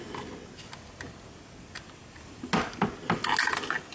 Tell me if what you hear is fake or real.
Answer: real